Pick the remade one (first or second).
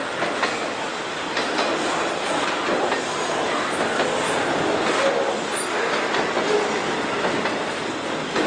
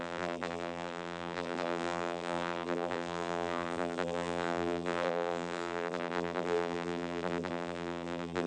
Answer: second